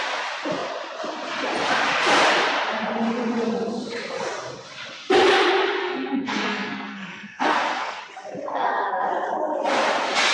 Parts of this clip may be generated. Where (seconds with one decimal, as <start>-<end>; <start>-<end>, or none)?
5.8-8.0; 8.5-9.1